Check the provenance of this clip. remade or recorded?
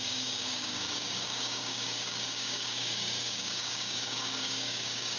remade